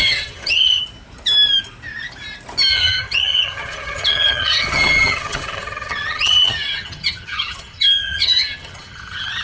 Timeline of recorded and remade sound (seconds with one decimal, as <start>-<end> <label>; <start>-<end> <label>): 0.0-0.8 remade; 0.8-2.7 recorded; 2.7-9.4 remade